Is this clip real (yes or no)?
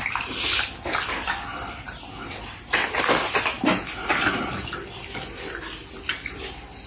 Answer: yes